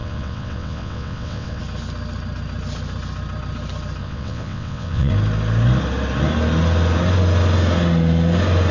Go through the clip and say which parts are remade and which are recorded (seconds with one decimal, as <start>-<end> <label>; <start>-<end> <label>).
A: 0.0-1.6 remade; 1.6-4.0 recorded; 4.0-5.1 remade; 5.1-8.7 recorded